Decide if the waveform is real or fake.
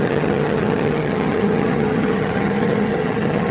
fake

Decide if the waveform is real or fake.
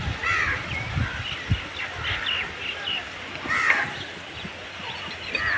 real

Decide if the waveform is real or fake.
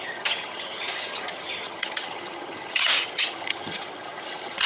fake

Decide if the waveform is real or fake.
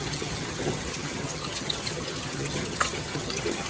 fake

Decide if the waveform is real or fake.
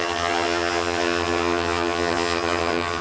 fake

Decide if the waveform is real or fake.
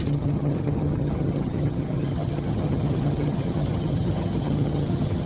fake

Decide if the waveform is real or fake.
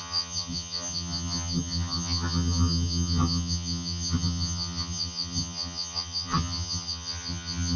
fake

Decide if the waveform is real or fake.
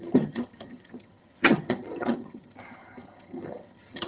fake